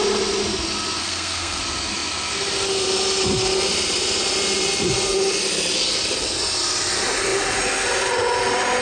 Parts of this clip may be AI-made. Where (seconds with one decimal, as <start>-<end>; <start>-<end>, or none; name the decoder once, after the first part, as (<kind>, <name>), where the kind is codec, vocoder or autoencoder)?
1.0-1.6 (codec, SNAC)